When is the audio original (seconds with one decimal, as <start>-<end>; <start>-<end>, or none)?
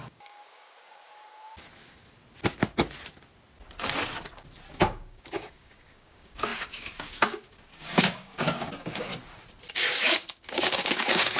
1.3-4.7; 9.1-9.7